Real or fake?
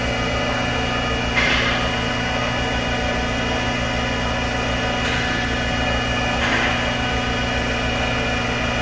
real